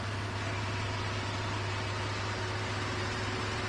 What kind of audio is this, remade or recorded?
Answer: recorded